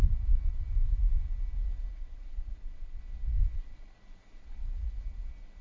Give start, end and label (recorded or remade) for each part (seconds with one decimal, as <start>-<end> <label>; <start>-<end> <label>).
0.0-1.9 recorded; 1.9-3.0 remade; 3.0-3.5 recorded; 3.5-4.7 remade; 4.7-5.6 recorded